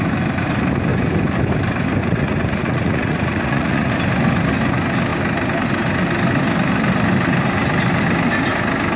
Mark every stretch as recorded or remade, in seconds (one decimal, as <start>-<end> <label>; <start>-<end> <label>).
0.0-2.0 recorded; 2.0-3.9 remade; 3.9-9.0 recorded